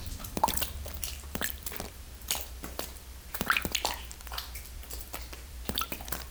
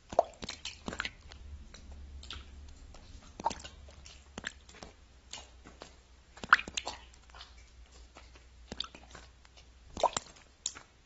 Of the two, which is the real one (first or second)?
second